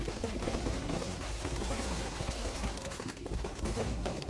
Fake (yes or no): yes